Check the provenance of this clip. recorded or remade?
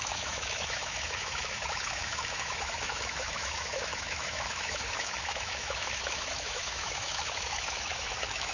remade